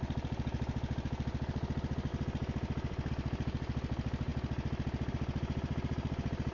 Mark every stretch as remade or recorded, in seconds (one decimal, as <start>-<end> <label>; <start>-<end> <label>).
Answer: 0.0-2.1 remade; 2.1-3.1 recorded; 3.1-4.3 remade; 4.3-5.1 recorded; 5.1-6.5 remade